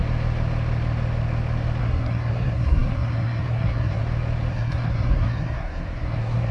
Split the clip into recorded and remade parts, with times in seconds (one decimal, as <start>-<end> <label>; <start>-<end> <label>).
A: 0.0-1.8 recorded; 1.8-4.0 remade; 4.0-4.5 recorded; 4.5-6.5 remade